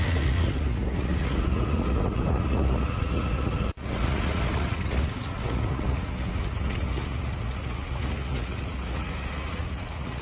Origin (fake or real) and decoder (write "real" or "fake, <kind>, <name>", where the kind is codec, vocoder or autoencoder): fake, vocoder, Vocos